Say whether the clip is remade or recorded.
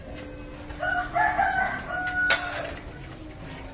recorded